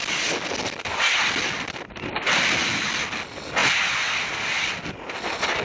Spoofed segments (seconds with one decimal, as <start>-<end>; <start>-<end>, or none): none